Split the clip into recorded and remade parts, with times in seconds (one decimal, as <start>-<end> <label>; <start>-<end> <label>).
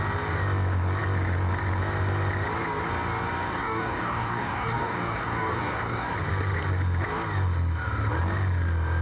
0.0-3.5 recorded; 3.5-6.1 remade; 6.1-9.0 recorded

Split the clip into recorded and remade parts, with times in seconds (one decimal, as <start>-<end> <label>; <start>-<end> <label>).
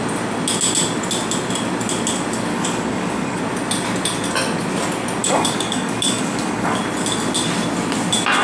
0.0-2.5 recorded; 2.5-3.4 remade; 3.4-5.2 recorded; 5.2-6.8 remade; 6.8-8.4 recorded